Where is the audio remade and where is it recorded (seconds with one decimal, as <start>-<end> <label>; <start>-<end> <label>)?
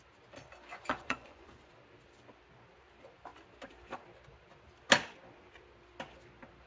0.0-0.7 recorded; 0.7-1.7 remade; 1.7-6.7 recorded